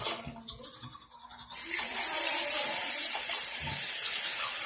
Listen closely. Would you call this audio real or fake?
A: real